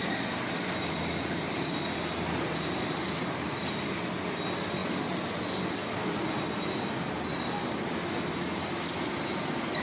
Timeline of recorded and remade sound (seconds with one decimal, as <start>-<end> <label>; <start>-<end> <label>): 0.0-9.8 recorded